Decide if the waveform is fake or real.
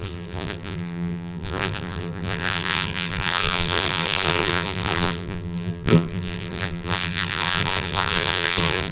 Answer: fake